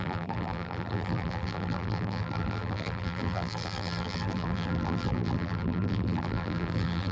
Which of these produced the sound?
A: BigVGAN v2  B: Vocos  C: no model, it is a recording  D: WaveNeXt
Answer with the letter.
A